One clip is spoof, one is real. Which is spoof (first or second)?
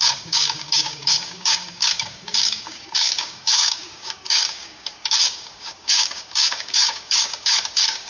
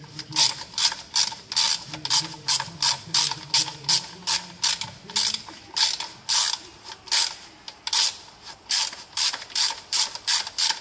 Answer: first